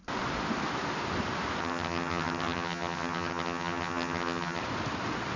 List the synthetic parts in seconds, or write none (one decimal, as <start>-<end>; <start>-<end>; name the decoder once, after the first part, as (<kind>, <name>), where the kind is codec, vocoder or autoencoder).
1.6-4.6 (vocoder, HiFi-GAN)